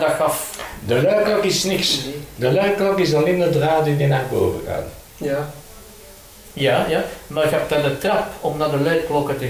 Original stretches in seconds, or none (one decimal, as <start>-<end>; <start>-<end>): 0.0-5.5